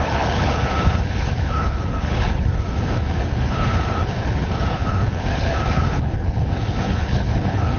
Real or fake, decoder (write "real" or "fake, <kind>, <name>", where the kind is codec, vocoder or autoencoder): fake, codec, HILCodec